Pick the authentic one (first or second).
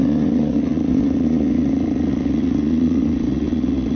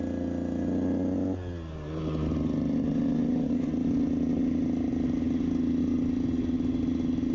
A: second